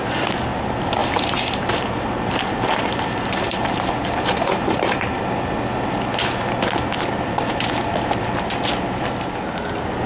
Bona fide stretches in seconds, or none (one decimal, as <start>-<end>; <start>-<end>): 0.0-1.0; 5.2-10.1